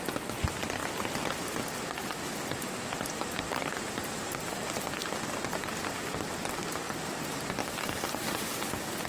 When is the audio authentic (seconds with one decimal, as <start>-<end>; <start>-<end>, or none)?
none